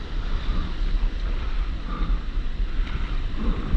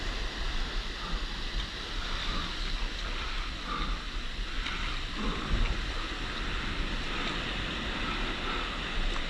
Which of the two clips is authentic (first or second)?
second